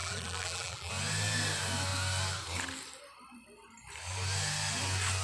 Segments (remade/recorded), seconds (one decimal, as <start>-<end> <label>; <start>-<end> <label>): 0.0-0.9 remade; 0.9-5.2 recorded

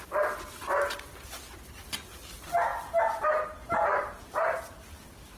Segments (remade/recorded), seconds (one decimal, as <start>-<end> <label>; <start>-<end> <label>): 0.0-5.4 recorded